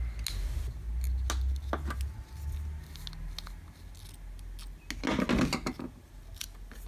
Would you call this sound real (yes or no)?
yes